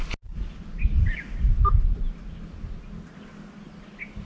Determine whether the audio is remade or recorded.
recorded